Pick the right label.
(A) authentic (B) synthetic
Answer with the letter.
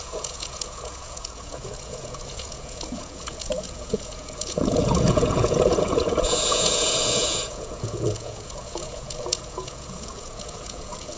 B